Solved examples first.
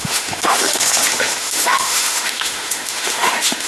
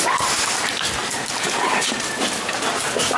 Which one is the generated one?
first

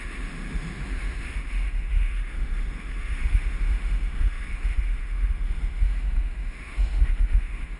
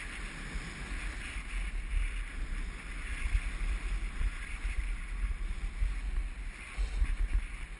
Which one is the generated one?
first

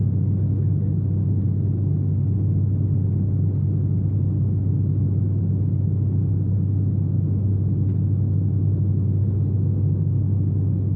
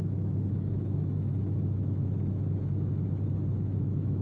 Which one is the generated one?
second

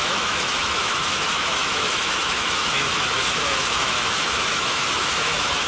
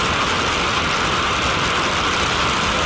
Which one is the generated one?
first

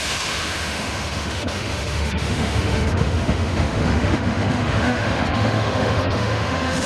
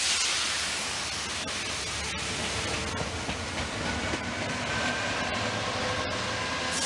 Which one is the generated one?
first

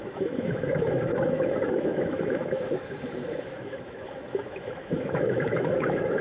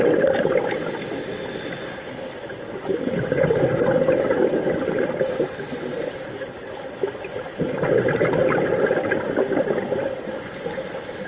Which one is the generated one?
first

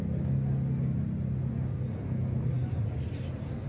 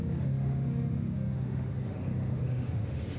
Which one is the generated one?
second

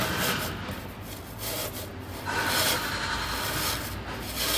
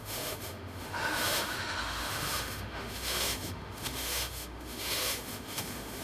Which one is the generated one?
second